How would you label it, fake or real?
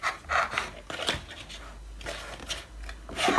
real